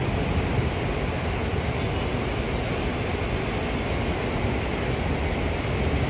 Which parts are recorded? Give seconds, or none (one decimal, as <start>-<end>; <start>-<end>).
0.0-6.1